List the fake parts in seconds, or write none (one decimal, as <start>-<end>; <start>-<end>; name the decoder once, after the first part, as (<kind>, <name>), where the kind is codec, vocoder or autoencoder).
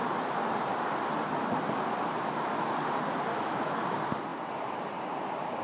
0.0-0.7 (vocoder, BigVGAN v2); 3.9-5.6